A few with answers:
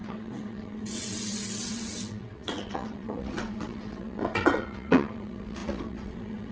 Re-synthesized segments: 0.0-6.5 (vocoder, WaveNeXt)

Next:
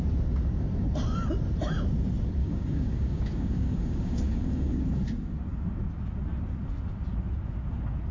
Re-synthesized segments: 2.4-4.8 (codec, DAC)